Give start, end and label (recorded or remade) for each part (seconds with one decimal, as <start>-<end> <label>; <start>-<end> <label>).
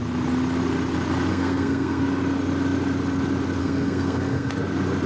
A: 0.0-1.3 recorded; 1.3-2.0 remade; 2.0-3.6 recorded; 3.6-4.5 remade; 4.5-5.1 recorded